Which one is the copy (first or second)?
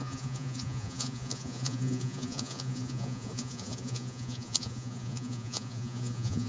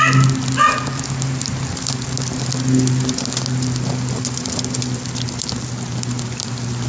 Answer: first